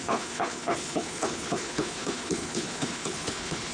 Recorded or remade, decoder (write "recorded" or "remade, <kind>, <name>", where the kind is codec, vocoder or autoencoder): remade, codec, HILCodec